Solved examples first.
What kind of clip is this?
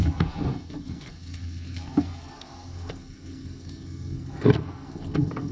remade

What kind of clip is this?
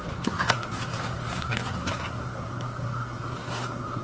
remade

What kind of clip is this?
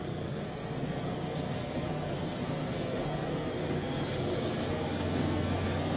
remade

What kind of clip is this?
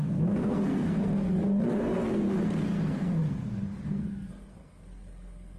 remade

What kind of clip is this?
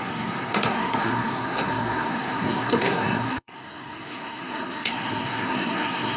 remade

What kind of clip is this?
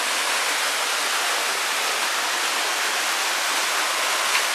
recorded